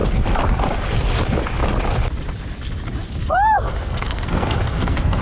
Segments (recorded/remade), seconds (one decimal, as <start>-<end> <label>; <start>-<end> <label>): 0.0-3.2 recorded; 3.2-5.2 remade